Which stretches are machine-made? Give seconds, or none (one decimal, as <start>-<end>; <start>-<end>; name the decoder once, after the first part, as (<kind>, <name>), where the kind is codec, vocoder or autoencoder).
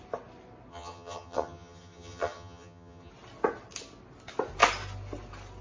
0.7-3.1 (vocoder, HiFi-GAN)